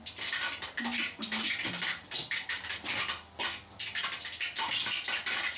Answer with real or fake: real